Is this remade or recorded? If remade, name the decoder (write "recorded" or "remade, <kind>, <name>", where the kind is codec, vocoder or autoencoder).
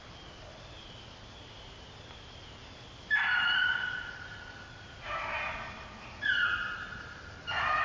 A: recorded